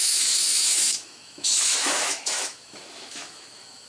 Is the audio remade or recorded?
remade